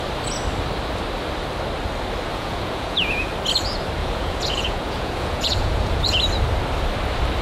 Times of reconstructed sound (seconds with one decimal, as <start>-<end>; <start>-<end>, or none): 2.3-3.3; 4.0-6.0